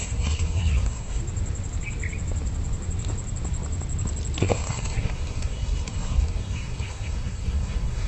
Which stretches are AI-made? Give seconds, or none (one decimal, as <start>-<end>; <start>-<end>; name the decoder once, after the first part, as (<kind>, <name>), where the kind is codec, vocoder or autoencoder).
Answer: 0.0-1.2 (codec, SNAC); 4.4-8.1